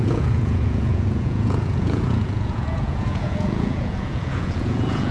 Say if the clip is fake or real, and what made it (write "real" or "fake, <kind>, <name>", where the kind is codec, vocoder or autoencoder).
fake, vocoder, Vocos